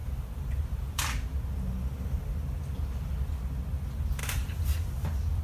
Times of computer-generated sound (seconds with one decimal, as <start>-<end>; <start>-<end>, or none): 0.0-1.0; 4.2-5.4